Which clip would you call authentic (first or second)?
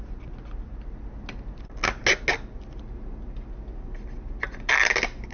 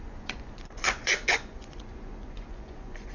first